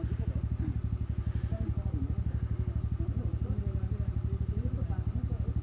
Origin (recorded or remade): recorded